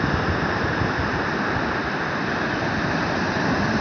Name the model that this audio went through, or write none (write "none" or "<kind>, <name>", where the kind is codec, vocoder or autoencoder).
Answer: none